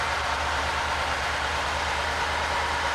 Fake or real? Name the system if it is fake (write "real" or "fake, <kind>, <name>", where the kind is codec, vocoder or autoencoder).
fake, vocoder, BigVGAN v2